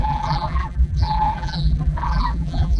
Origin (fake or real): fake